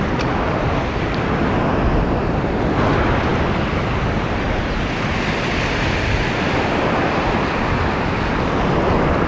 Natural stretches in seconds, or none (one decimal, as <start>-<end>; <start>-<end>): 0.0-9.3